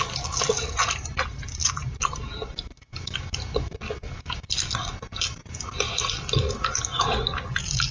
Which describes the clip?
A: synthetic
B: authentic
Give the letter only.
B